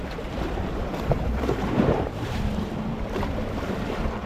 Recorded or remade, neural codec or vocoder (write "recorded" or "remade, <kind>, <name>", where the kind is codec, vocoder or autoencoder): remade, vocoder, BigVGAN v2